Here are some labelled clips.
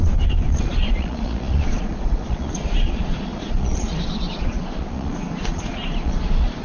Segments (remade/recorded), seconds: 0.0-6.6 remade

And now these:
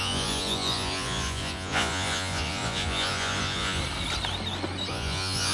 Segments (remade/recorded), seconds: 0.0-3.8 remade; 3.8-4.9 recorded; 4.9-5.5 remade

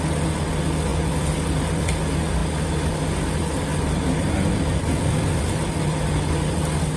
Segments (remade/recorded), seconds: 0.0-7.0 recorded

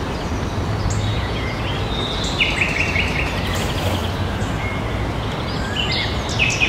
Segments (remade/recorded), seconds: 0.0-1.1 recorded; 1.1-1.6 remade; 1.6-6.7 recorded

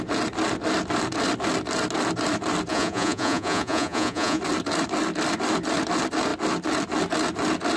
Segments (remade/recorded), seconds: 0.0-2.7 recorded; 2.7-4.4 remade; 4.4-7.8 recorded